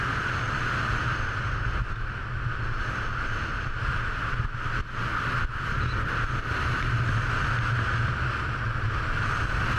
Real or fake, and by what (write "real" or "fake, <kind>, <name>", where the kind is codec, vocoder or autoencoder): real